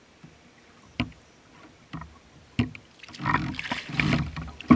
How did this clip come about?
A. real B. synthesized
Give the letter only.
A